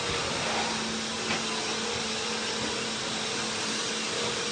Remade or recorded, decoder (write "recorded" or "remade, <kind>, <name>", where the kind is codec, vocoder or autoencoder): recorded